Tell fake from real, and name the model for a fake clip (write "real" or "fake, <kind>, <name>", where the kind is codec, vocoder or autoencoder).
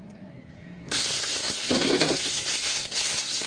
fake, codec, SNAC